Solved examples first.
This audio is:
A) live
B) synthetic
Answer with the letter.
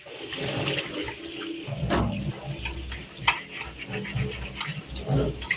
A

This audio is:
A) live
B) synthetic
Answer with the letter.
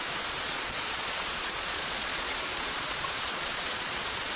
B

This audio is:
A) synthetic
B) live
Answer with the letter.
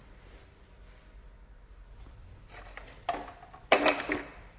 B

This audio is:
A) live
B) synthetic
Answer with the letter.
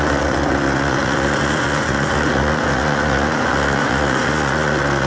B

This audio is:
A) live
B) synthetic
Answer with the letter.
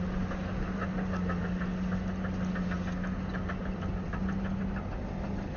A